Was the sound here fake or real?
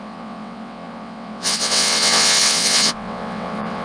fake